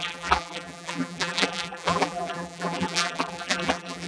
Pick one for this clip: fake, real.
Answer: fake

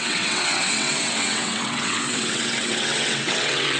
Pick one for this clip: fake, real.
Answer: fake